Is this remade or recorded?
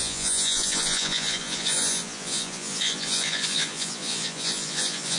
remade